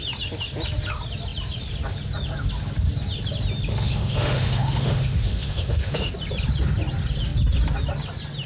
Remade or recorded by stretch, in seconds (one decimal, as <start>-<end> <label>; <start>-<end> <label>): 0.0-3.7 recorded; 3.7-6.1 remade; 6.1-8.5 recorded